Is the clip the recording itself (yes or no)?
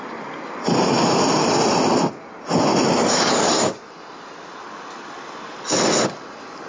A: yes